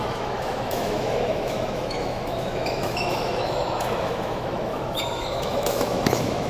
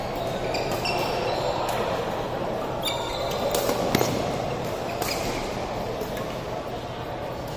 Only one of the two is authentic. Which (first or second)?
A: second